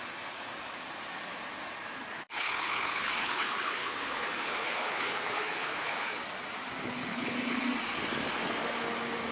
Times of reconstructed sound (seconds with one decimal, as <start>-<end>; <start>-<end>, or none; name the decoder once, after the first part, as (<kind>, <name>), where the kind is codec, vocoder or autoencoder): 2.1-6.2 (codec, HILCodec); 7.1-7.6